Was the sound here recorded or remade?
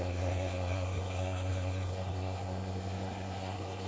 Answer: remade